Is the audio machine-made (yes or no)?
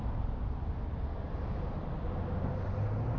no